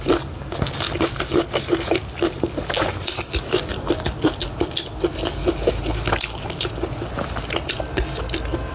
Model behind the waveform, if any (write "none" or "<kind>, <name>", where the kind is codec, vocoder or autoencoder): none